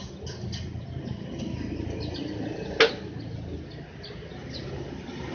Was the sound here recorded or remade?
recorded